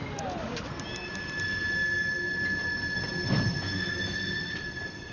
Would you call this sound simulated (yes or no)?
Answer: no